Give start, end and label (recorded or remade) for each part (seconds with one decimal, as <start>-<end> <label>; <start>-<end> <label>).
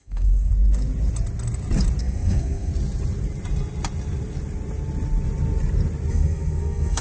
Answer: 0.0-0.5 remade; 0.5-2.0 recorded; 2.0-2.7 remade; 2.7-6.1 recorded; 6.1-7.0 remade